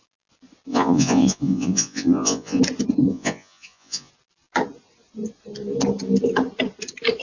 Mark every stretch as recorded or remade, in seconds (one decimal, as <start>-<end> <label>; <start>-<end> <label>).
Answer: 0.0-0.7 recorded; 0.7-2.6 remade; 2.6-3.1 recorded; 3.1-4.1 remade; 4.1-7.2 recorded